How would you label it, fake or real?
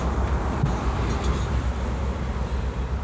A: real